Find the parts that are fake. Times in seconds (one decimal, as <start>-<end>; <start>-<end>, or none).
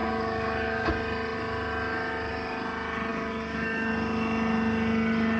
0.0-0.9; 3.1-3.9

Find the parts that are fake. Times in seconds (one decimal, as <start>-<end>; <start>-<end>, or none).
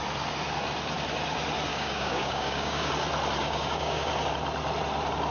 1.7-2.9; 3.4-4.1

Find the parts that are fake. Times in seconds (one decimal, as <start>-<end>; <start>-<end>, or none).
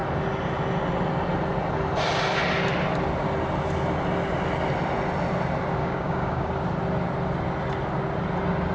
5.8-6.5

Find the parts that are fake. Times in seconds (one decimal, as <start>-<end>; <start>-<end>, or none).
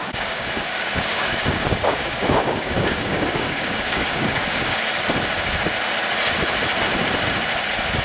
0.0-4.8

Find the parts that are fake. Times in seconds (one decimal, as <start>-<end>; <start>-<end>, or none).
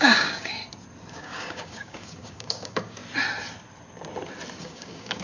0.0-0.6; 1.1-3.0; 4.6-5.2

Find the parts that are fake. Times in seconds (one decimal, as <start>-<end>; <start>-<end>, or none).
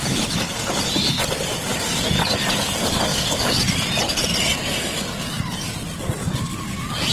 3.1-3.6; 6.2-7.1